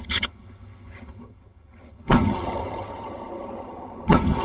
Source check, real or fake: fake